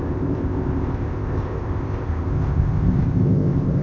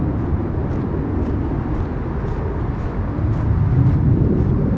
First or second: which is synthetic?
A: first